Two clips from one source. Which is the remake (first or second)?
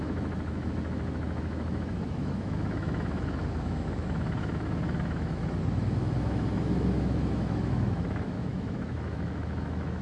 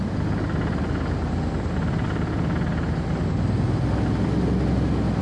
first